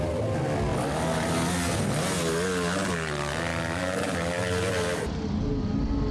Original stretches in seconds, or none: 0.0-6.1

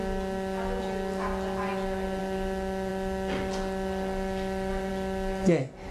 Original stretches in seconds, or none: 0.0-5.9

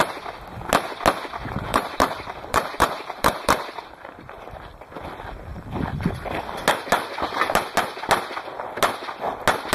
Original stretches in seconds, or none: 0.0-1.7; 4.5-9.7

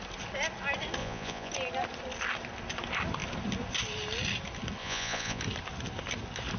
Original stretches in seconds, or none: 0.0-1.0; 1.5-4.8; 5.4-6.6

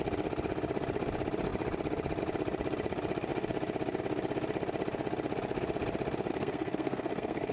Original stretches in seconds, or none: 0.0-6.3

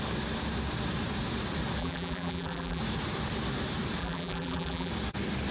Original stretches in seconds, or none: 0.0-1.8; 2.8-4.0; 4.9-5.5